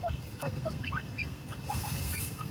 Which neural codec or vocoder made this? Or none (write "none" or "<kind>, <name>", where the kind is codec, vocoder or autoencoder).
codec, SNAC